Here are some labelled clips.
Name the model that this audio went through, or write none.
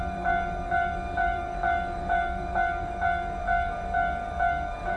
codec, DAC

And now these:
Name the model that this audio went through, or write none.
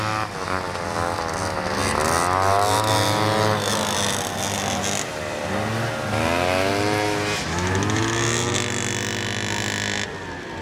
none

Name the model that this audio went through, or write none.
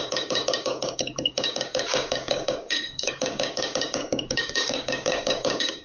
codec, DAC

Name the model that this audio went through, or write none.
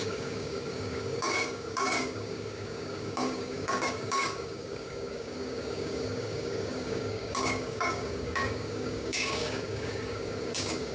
codec, DAC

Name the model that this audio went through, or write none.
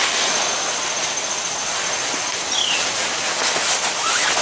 none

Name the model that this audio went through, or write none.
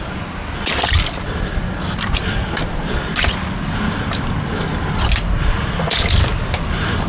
none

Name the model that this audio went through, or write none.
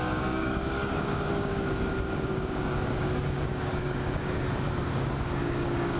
codec, DAC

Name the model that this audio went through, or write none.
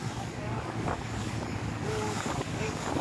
codec, DAC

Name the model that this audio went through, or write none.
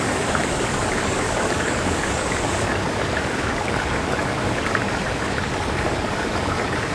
codec, DAC